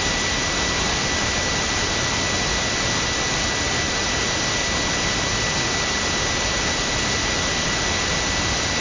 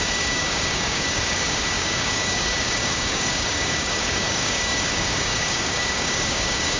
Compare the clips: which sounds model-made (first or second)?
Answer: second